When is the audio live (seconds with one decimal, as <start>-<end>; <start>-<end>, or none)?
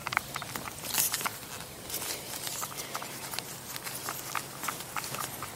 0.0-5.6